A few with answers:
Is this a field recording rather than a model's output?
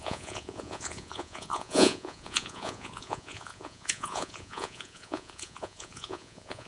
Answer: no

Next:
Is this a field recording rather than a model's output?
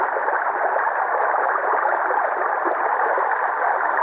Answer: yes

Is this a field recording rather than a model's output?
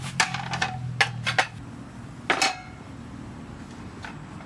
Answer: yes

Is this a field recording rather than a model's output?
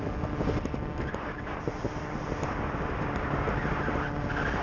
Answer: yes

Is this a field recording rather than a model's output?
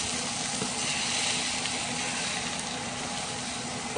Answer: yes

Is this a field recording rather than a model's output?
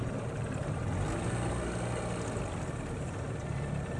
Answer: yes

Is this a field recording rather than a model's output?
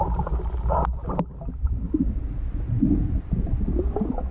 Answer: yes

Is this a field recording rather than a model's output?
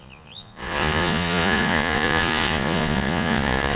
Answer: no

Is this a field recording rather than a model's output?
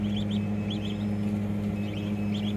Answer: yes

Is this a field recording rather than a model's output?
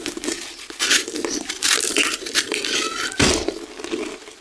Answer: yes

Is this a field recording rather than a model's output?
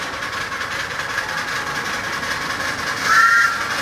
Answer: yes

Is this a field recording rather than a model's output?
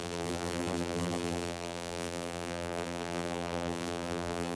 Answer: no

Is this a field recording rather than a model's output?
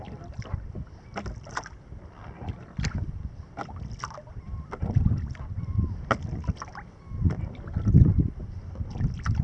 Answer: yes